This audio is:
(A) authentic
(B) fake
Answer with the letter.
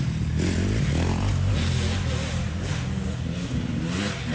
A